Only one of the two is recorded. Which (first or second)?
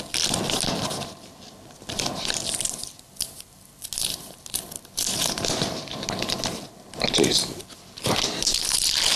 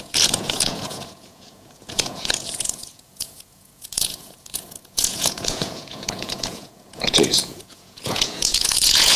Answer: first